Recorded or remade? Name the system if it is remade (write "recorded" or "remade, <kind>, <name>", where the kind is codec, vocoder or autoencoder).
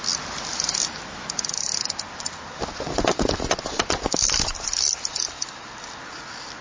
recorded